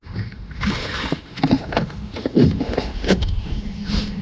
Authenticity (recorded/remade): remade